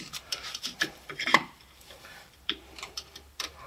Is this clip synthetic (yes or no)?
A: yes